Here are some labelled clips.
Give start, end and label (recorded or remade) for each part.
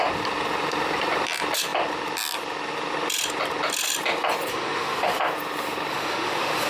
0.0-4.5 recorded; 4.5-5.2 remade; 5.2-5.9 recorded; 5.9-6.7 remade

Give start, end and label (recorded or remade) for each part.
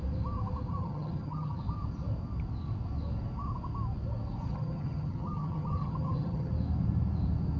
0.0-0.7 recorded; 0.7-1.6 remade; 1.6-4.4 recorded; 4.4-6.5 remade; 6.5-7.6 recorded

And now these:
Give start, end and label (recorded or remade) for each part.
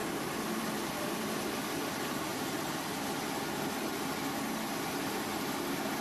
0.0-0.6 recorded; 0.6-2.3 remade; 2.3-5.3 recorded; 5.3-6.0 remade